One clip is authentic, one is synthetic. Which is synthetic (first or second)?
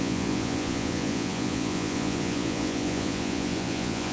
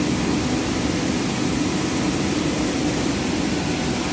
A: first